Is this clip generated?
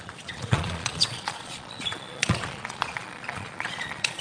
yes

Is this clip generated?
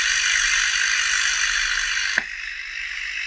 no